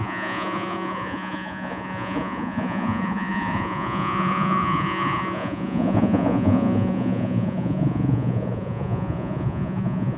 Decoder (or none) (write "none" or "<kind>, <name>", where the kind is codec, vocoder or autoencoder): vocoder, Vocos